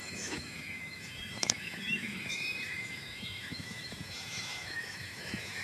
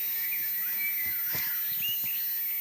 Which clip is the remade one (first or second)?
first